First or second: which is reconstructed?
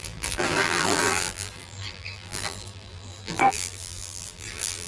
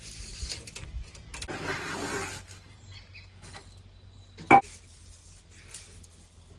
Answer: first